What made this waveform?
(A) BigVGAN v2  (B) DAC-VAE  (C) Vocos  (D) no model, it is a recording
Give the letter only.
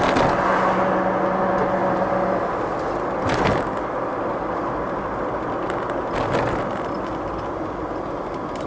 D